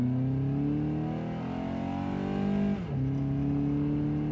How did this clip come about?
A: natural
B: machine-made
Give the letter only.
A